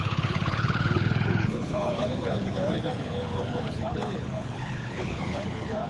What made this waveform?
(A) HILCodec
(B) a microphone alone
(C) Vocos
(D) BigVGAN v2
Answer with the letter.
A